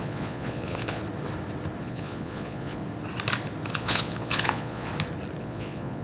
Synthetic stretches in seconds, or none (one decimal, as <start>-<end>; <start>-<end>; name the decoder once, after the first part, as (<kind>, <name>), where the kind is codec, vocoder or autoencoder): 0.0-1.0 (vocoder, Vocos); 1.8-2.8; 3.7-4.9; 5.4-6.0